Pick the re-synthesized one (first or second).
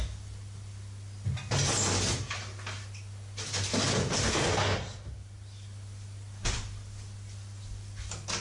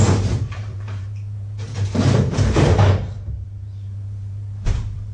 second